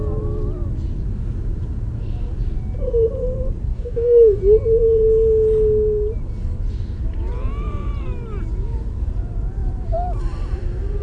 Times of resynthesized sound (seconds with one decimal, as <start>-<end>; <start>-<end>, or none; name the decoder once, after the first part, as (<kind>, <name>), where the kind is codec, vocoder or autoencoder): 3.7-4.4 (codec, DAC)